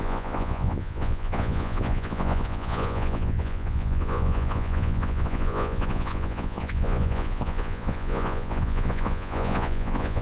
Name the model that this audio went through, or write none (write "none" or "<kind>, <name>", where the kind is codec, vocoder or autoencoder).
vocoder, Vocos